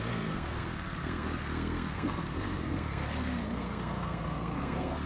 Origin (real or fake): fake